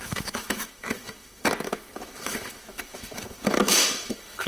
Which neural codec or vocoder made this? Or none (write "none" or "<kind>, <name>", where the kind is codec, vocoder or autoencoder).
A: autoencoder, DAC-VAE